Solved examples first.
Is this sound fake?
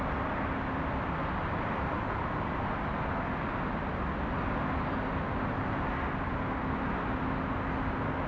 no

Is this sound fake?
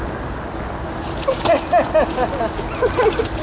no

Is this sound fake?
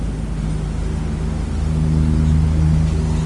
no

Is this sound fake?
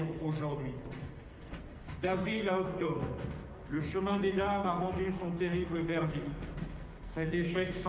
yes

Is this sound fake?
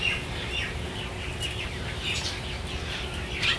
no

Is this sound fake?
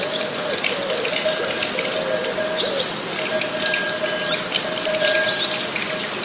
no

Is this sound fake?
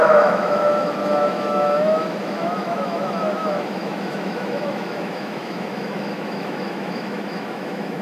yes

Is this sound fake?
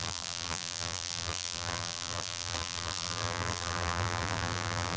yes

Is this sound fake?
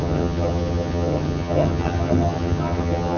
yes